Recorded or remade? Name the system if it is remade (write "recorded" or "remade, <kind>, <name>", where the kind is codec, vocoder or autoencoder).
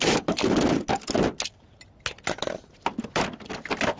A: recorded